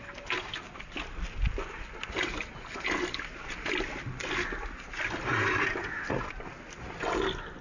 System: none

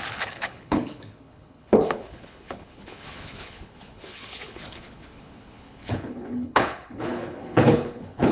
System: codec, HILCodec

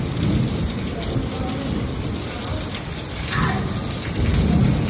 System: none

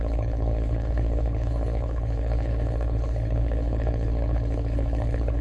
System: codec, HILCodec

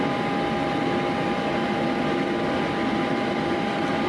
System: none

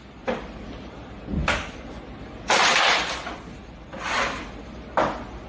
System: none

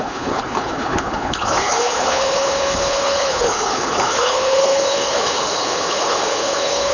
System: codec, HILCodec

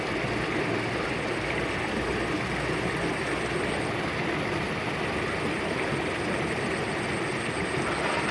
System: none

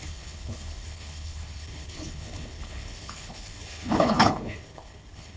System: codec, HILCodec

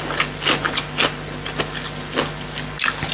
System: none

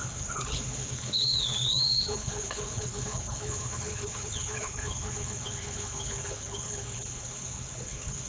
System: codec, HILCodec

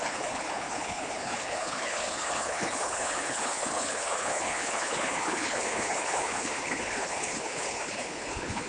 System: codec, HILCodec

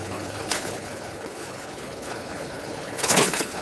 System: codec, HILCodec